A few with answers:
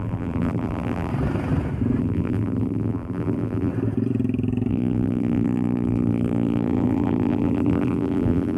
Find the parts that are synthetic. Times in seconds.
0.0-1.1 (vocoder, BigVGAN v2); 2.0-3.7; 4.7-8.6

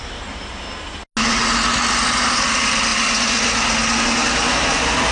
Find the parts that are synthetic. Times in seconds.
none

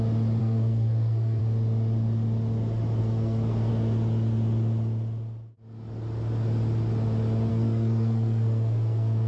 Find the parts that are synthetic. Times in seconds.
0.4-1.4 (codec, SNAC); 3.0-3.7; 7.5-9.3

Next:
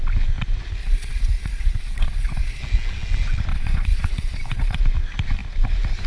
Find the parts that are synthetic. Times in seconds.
0.8-2.6 (vocoder, Vocos); 3.5-4.8